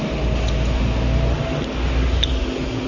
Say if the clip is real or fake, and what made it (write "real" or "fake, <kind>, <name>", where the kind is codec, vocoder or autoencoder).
real